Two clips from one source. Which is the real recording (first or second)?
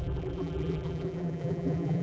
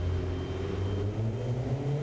second